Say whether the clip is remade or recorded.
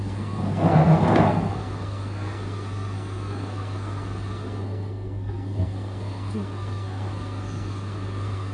remade